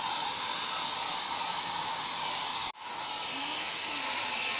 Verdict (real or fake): real